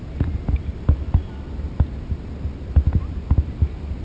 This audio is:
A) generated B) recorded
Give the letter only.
B